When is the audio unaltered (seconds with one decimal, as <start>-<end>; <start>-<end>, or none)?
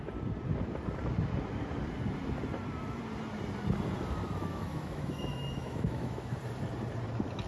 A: 0.0-4.4; 6.4-7.5